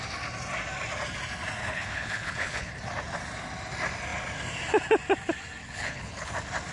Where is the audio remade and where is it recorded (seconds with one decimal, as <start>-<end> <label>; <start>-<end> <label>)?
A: 0.0-1.6 recorded; 1.6-2.7 remade; 2.7-5.6 recorded; 5.6-6.3 remade; 6.3-6.7 recorded